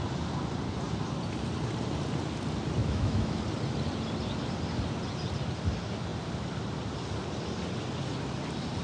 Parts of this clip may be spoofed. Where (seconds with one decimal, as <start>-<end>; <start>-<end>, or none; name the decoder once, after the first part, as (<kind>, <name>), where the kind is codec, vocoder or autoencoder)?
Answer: 2.8-3.4 (autoencoder, DAC-VAE)